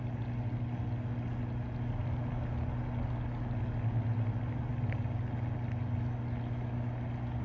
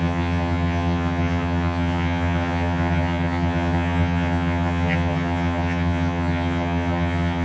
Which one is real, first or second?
first